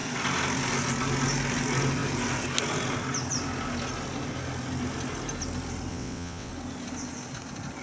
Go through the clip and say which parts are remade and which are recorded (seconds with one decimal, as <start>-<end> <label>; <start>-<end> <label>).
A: 0.0-5.9 recorded; 5.9-6.5 remade; 6.5-7.8 recorded